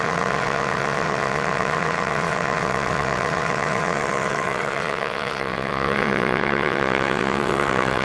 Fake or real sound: fake